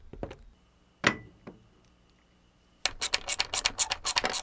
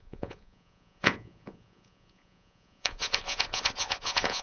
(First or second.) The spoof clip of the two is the second